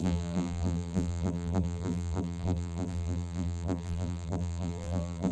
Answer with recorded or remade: remade